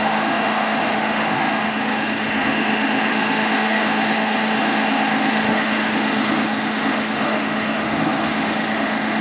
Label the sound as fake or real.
fake